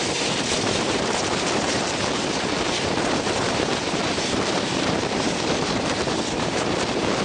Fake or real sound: fake